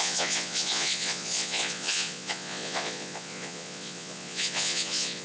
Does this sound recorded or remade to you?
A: remade